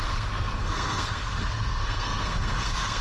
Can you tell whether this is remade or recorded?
remade